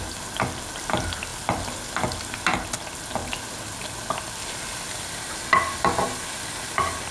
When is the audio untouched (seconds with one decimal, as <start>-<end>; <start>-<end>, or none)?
0.0-7.1